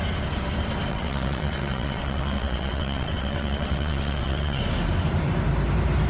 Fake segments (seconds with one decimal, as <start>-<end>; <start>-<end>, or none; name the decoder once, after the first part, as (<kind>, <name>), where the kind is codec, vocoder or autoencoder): 0.9-4.6 (vocoder, WaveNeXt)